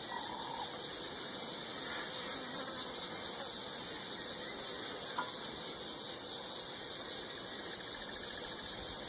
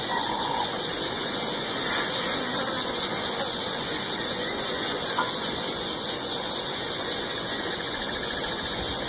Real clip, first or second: first